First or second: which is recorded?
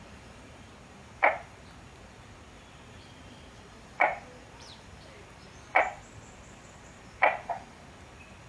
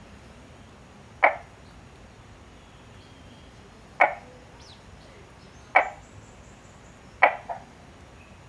second